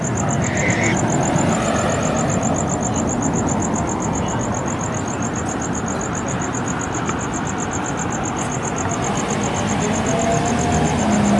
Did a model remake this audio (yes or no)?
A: no